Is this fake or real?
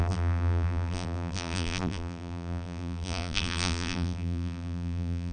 fake